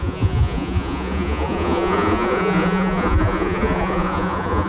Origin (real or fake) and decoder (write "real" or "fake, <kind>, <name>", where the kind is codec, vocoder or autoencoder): fake, vocoder, Vocos